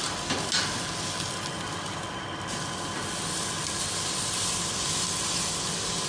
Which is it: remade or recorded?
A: recorded